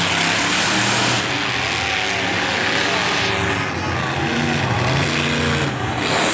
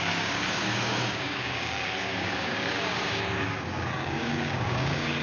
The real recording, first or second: first